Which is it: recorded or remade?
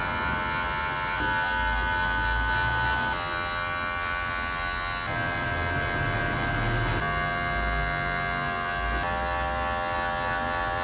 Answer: recorded